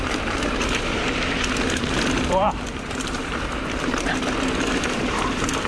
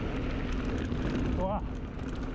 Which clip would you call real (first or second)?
second